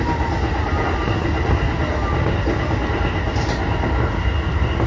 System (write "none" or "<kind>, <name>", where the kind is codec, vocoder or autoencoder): none